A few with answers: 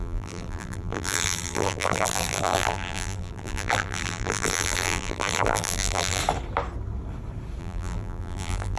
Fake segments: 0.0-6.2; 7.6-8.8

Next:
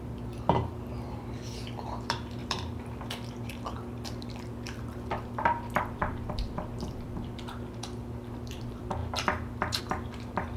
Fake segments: 0.0-10.6